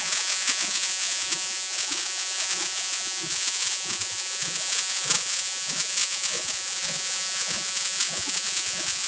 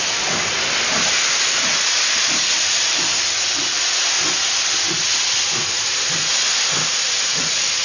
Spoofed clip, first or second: first